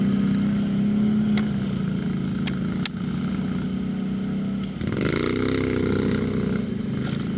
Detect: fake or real real